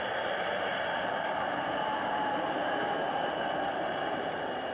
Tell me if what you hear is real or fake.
fake